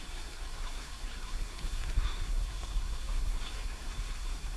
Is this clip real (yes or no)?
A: no